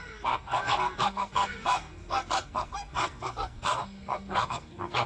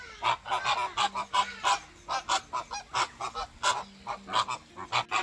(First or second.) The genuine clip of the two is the second